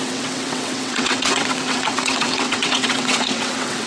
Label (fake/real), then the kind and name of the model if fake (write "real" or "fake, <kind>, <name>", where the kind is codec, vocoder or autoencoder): fake, vocoder, WaveNeXt